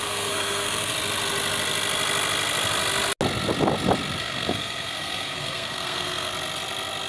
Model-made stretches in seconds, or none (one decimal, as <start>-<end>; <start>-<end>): 0.0-0.9; 4.2-6.3